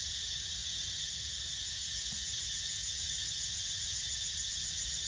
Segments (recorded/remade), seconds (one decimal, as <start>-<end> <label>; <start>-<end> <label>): 0.0-5.1 remade

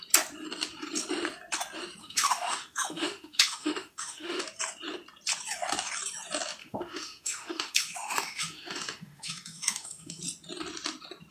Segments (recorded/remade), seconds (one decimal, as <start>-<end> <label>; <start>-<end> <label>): 0.0-2.0 recorded; 2.0-4.4 remade; 4.4-6.6 recorded; 6.6-10.2 remade; 10.2-11.3 recorded